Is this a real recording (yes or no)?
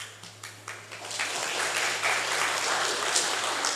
yes